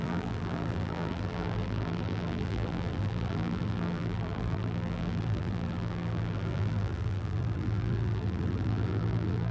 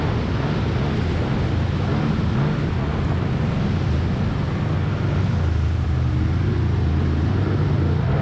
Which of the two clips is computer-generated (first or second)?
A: first